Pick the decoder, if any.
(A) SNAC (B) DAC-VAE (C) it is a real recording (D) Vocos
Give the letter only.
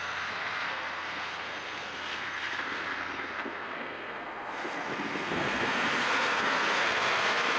A